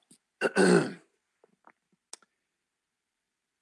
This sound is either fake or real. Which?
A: real